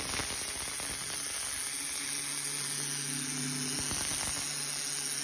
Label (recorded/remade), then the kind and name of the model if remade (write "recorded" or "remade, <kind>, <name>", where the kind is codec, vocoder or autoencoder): recorded